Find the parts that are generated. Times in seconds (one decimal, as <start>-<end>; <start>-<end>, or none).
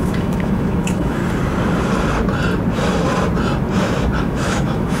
0.0-1.2; 4.2-5.0